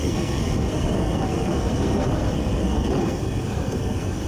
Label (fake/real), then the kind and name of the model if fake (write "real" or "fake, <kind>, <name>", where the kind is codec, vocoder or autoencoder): fake, codec, SNAC